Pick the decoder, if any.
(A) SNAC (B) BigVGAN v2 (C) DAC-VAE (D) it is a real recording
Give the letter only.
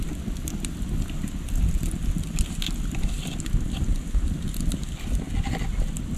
D